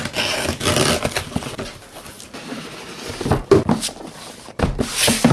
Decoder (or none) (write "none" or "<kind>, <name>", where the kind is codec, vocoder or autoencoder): none